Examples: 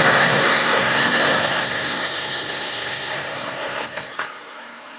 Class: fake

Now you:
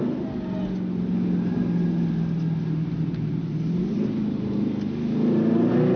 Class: real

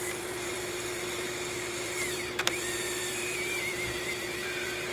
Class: fake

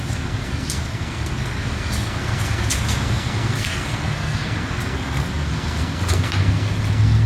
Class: fake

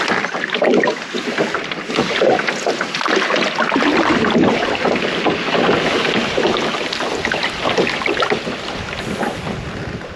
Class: real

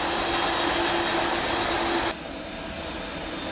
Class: real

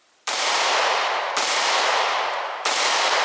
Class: fake